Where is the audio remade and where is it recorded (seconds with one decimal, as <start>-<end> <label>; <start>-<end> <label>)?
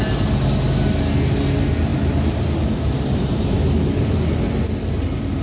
0.0-5.4 recorded